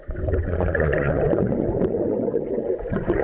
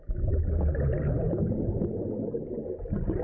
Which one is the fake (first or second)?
first